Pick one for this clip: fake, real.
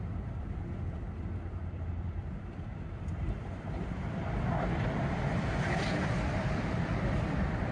fake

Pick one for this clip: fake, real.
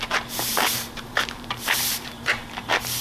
fake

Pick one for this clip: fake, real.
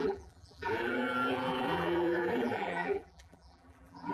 fake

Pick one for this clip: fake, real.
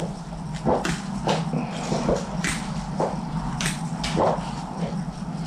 real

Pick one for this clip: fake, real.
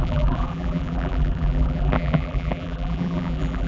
fake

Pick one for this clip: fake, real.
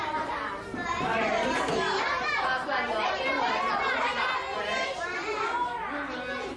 real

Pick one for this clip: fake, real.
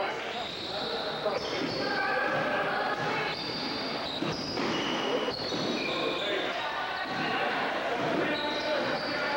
real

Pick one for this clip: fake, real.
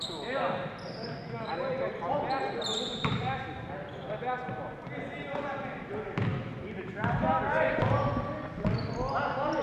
real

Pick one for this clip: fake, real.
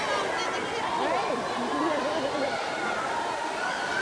real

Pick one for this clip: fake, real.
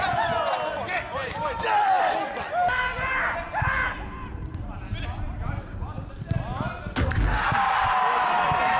real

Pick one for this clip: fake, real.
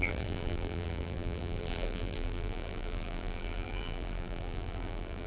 fake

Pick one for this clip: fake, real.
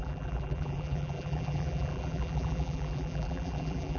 fake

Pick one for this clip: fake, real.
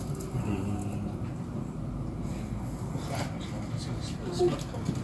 real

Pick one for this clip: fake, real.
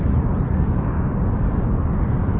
real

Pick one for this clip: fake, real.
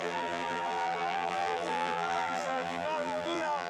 fake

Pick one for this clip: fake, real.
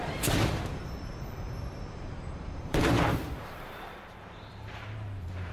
fake